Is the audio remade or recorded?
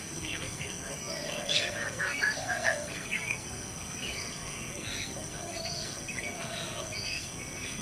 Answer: remade